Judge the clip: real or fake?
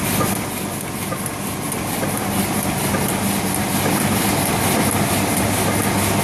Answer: real